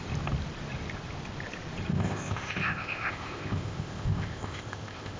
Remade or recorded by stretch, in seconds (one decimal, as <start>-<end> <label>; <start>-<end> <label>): 0.0-1.9 recorded; 1.9-5.2 remade